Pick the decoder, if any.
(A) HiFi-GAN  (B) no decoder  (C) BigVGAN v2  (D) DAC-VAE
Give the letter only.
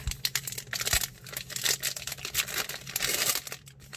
B